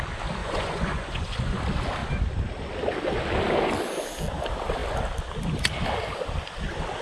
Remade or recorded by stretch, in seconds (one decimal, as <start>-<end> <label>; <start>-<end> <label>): 0.0-0.4 recorded; 0.4-1.6 remade; 1.6-7.0 recorded